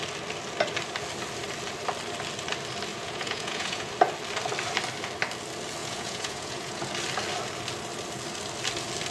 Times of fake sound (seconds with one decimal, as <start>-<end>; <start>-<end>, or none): 2.9-3.9; 5.8-6.9